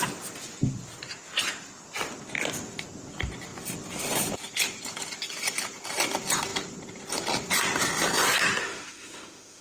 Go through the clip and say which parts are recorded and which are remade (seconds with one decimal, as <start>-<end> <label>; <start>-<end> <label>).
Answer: 0.0-8.6 recorded; 8.6-9.6 remade